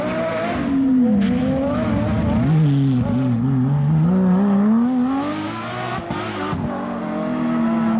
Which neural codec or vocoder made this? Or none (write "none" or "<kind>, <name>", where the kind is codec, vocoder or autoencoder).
none